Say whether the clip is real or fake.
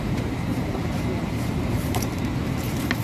fake